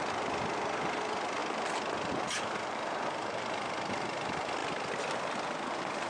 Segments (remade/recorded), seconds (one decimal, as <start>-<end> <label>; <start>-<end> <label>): 0.0-1.4 remade; 1.4-2.1 recorded; 2.1-4.6 remade; 4.6-6.1 recorded